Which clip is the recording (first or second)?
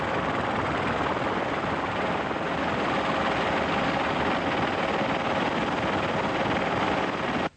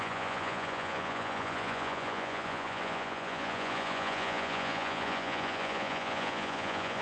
first